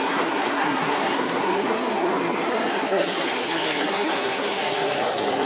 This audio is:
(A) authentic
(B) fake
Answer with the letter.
B